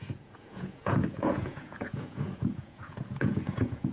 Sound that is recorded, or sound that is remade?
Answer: remade